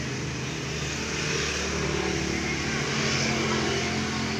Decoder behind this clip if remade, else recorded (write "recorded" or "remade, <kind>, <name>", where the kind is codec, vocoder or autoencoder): recorded